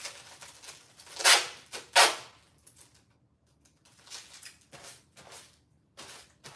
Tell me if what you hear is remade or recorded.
recorded